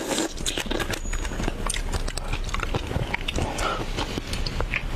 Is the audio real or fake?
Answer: real